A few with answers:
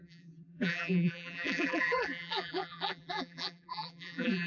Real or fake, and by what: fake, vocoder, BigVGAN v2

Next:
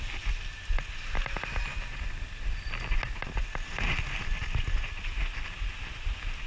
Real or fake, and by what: real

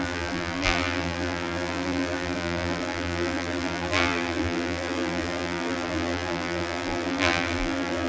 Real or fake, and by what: fake, vocoder, BigVGAN v2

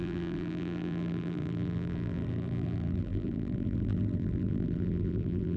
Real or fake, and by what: fake, vocoder, BigVGAN v2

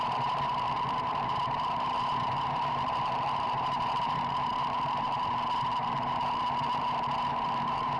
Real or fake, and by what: fake, vocoder, BigVGAN v2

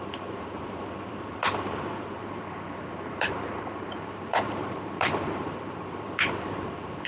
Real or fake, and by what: fake, vocoder, BigVGAN v2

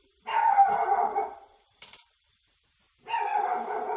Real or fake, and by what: fake, vocoder, BigVGAN v2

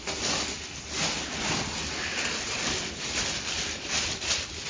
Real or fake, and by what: real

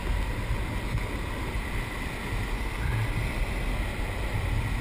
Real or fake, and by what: real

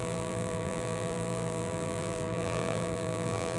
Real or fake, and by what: fake, vocoder, BigVGAN v2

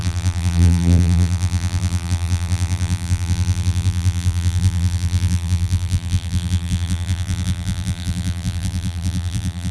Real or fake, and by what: fake, vocoder, BigVGAN v2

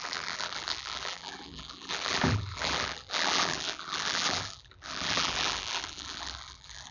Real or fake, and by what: fake, vocoder, BigVGAN v2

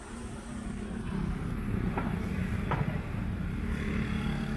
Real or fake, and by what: fake, vocoder, BigVGAN v2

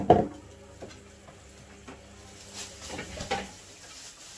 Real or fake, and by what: real